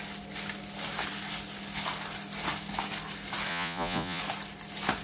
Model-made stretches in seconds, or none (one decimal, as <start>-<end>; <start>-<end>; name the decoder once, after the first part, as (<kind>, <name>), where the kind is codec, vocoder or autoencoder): 3.5-4.2 (vocoder, Vocos)